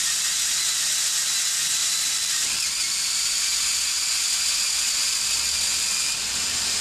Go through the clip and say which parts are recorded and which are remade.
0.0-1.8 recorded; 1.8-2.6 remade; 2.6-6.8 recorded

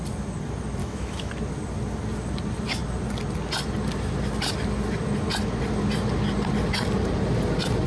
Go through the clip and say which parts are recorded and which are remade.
0.0-0.8 recorded; 0.8-1.3 remade; 1.3-7.9 recorded

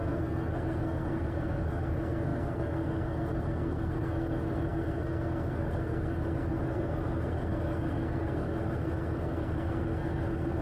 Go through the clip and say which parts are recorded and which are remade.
0.0-10.6 remade

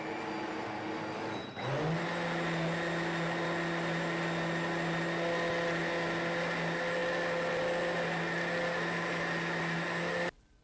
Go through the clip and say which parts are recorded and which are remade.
0.0-10.6 recorded

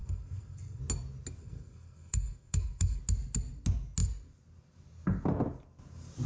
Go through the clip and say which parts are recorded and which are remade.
0.0-0.8 remade; 0.8-1.4 recorded; 1.4-3.0 remade; 3.0-6.3 recorded

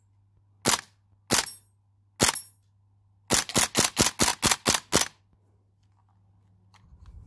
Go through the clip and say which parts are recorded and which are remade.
0.0-7.3 recorded